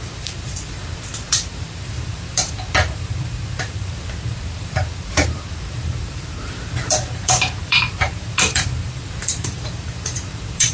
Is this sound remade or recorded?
remade